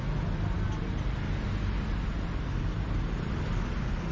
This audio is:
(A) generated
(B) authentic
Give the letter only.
B